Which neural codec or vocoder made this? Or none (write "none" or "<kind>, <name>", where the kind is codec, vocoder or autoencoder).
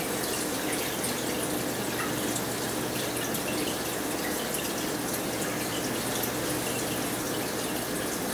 none